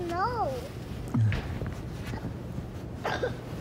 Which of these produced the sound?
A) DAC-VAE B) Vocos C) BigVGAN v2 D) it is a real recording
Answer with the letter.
D